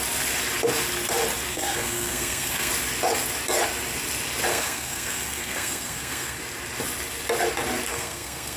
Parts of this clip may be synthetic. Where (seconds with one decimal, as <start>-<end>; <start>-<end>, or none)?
1.5-2.7; 4.5-6.4; 7.9-8.6